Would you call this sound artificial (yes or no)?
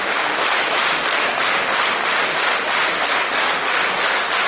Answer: no